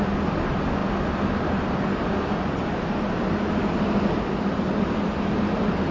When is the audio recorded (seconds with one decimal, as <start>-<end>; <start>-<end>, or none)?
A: 0.0-5.9